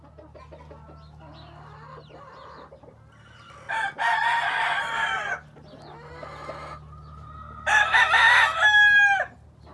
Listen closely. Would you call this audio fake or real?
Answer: real